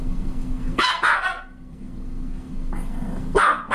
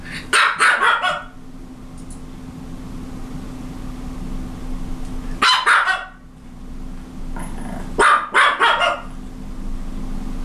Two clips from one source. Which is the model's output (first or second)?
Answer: first